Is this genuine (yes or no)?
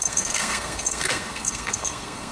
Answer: no